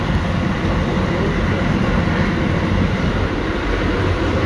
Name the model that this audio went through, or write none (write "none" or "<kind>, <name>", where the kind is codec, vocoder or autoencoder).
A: none